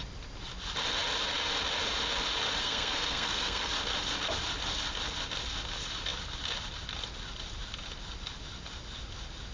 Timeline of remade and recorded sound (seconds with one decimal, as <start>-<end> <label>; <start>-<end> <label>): 0.0-2.6 recorded; 2.6-3.7 remade; 3.7-9.5 recorded